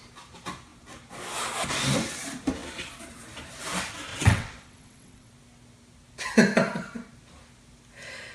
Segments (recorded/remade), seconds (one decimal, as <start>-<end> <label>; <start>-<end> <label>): 0.0-4.1 recorded; 4.1-5.3 remade; 5.3-8.3 recorded